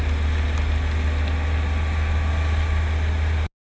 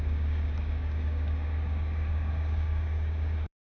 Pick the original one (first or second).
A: first